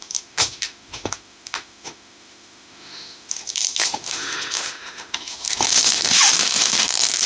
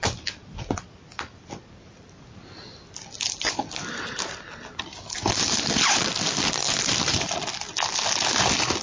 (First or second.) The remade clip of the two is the first